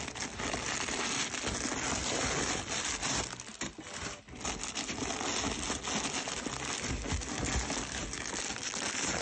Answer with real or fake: real